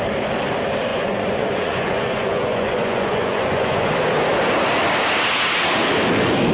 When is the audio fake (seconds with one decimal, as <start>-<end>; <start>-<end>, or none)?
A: 0.9-3.9